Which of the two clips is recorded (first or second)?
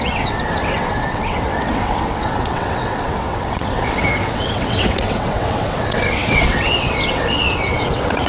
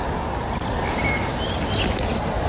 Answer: second